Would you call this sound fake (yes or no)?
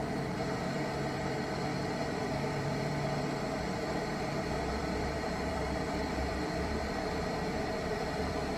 yes